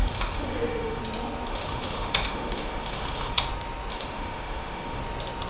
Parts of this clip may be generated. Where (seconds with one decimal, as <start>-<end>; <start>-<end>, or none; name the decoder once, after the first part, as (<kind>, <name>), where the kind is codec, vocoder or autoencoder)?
0.0-1.0 (autoencoder, DAC-VAE); 1.5-3.4; 3.9-5.0